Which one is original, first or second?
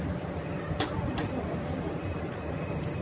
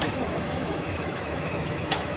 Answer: first